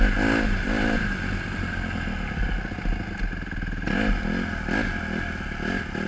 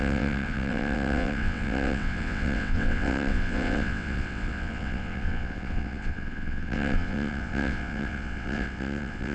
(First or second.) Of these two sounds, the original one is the first